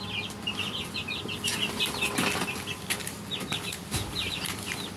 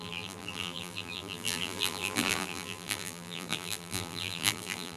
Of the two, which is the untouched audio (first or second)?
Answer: first